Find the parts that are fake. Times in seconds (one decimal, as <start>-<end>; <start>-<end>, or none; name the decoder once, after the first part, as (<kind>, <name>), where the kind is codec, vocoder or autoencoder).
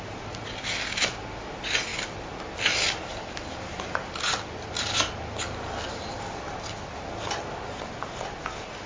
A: none